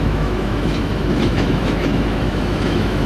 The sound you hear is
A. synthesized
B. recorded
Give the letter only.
A